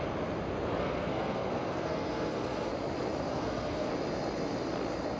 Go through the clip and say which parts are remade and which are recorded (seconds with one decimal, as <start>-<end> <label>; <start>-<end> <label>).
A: 0.0-0.8 recorded; 0.8-2.7 remade; 2.7-3.3 recorded; 3.3-3.9 remade; 3.9-5.2 recorded